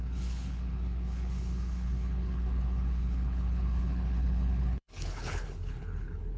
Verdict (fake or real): fake